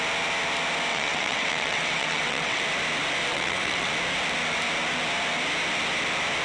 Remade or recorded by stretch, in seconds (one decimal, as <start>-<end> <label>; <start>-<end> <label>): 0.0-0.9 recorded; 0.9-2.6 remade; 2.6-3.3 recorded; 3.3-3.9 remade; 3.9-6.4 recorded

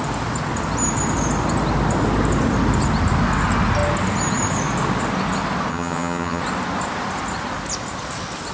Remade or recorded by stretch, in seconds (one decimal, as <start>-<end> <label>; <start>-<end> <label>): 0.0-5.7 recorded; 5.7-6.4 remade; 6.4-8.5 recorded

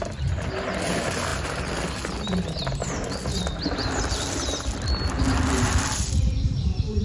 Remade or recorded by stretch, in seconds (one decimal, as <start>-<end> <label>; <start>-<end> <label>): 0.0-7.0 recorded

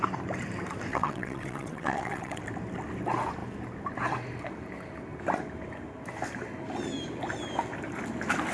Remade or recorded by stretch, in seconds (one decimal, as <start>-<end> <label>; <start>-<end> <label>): 0.0-0.9 recorded; 0.9-2.4 remade; 2.4-8.5 recorded

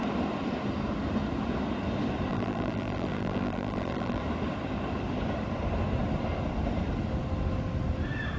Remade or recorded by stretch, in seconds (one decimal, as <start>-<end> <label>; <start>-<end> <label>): 0.0-2.3 recorded; 2.3-4.2 remade; 4.2-8.4 recorded

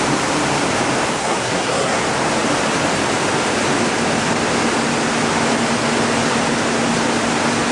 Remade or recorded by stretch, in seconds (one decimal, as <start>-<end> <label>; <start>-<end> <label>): 0.0-1.2 recorded; 1.2-2.0 remade; 2.0-7.7 recorded

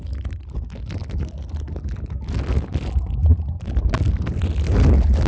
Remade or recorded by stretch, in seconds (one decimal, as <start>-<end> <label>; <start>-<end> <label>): 0.0-5.3 recorded

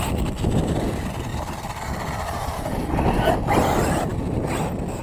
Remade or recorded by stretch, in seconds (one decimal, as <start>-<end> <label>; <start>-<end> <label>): 0.0-5.0 recorded